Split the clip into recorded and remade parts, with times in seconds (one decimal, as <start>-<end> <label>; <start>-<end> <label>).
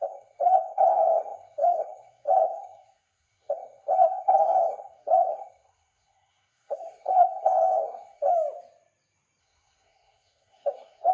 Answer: 0.0-8.3 remade; 8.3-9.4 recorded; 9.4-11.1 remade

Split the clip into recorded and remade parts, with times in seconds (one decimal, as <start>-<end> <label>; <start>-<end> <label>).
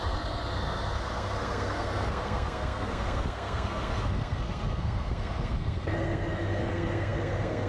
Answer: 0.0-7.7 remade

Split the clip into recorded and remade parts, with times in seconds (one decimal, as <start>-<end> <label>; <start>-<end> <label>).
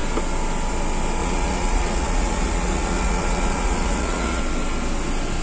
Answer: 0.0-1.2 recorded; 1.2-4.4 remade; 4.4-5.4 recorded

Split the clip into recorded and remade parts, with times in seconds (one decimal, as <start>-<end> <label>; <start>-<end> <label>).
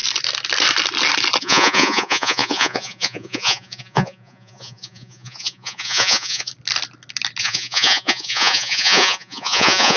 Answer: 0.0-1.4 recorded; 1.4-6.5 remade; 6.5-7.4 recorded; 7.4-10.0 remade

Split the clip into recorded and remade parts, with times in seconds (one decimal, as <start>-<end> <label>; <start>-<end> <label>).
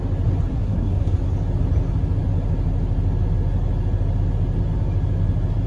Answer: 0.0-0.5 recorded; 0.5-1.0 remade; 1.0-5.7 recorded